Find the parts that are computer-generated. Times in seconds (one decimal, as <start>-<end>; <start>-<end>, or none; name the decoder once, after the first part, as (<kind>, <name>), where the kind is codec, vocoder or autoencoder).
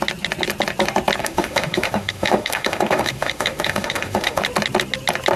1.2-4.4 (autoencoder, DAC-VAE)